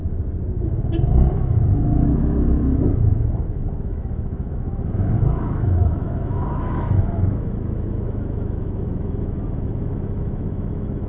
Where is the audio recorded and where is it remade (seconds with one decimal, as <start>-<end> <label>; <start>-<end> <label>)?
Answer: 0.0-1.3 recorded; 1.3-11.1 remade